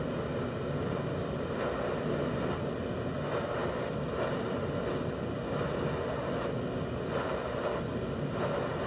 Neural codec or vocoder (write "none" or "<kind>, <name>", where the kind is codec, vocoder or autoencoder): none